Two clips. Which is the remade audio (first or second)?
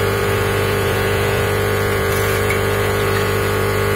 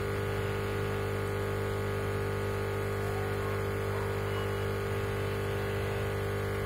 first